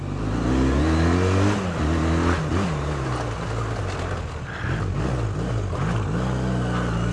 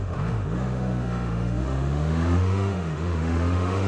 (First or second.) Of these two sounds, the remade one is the second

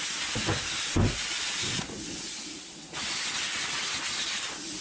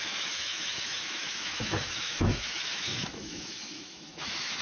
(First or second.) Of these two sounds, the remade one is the second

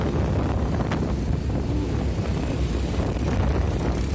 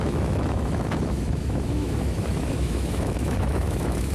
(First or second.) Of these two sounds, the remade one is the second